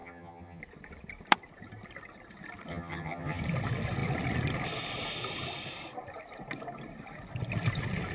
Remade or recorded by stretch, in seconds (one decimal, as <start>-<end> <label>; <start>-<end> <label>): 0.0-0.6 remade; 0.6-2.7 recorded; 2.7-3.4 remade; 3.4-8.1 recorded